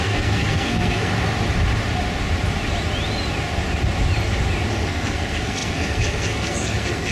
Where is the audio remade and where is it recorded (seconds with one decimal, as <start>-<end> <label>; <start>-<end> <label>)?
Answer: 0.0-1.1 remade; 1.1-4.7 recorded; 4.7-7.1 remade